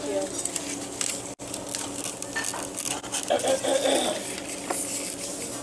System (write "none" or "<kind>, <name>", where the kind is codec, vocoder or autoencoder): none